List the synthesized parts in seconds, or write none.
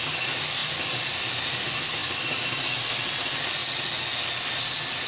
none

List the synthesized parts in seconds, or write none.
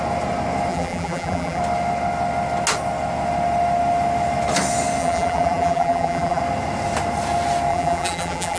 0.7-1.6 (vocoder, BigVGAN v2); 5.0-6.4; 7.7-8.6